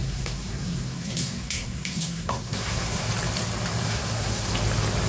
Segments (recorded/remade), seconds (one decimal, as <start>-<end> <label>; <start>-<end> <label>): 0.0-3.1 remade; 3.1-3.8 recorded; 3.8-4.5 remade; 4.5-5.1 recorded